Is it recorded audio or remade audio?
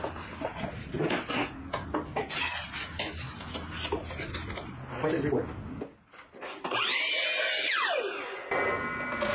recorded